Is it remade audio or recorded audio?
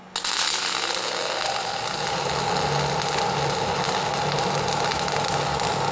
recorded